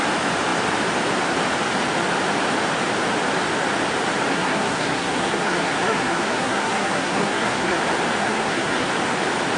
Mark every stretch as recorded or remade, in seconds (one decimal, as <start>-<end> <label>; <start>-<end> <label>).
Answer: 0.0-4.3 recorded; 4.3-7.8 remade; 7.8-8.2 recorded; 8.2-8.9 remade; 8.9-9.6 recorded